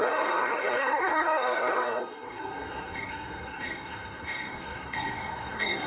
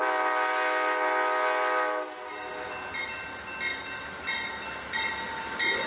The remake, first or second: first